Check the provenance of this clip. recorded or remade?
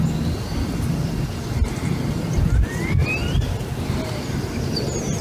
recorded